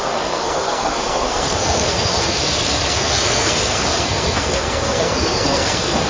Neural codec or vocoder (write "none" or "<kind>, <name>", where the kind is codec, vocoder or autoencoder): codec, SNAC